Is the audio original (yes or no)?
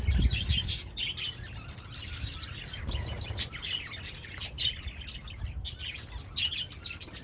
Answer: yes